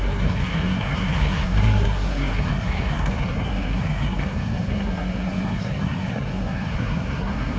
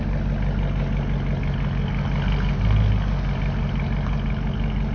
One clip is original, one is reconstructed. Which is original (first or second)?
second